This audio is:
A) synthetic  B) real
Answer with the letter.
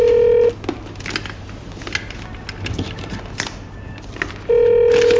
B